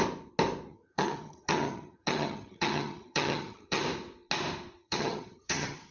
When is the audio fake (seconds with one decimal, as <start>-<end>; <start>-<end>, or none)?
0.7-3.8; 4.8-5.9